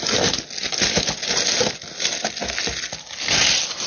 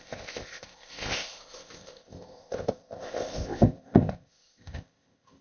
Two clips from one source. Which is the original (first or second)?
first